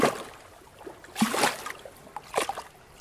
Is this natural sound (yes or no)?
yes